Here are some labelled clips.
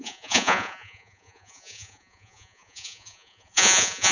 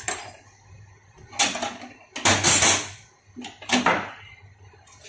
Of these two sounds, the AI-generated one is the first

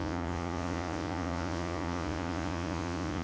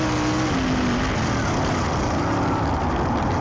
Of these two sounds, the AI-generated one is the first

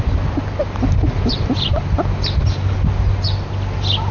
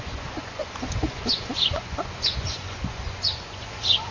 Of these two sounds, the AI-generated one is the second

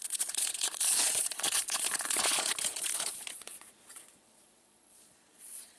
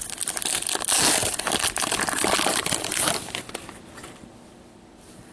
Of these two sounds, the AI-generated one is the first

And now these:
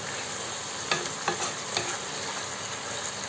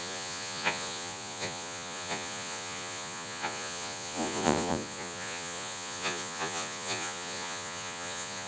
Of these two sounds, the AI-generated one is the second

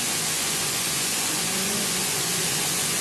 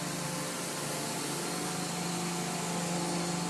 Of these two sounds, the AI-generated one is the first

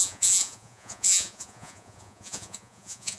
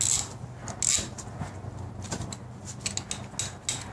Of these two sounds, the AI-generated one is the first